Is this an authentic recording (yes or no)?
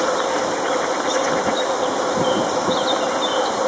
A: yes